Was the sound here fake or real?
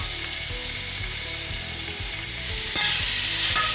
fake